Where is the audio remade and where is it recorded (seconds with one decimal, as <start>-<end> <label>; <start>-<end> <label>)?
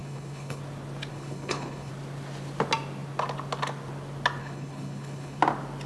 0.0-0.6 remade; 0.6-1.1 recorded; 1.1-1.9 remade; 1.9-4.4 recorded; 4.4-5.4 remade; 5.4-5.9 recorded